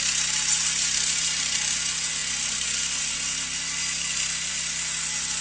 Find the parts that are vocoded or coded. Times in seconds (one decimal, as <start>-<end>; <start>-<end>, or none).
none